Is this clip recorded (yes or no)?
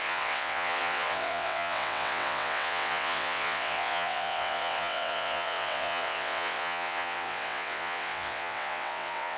no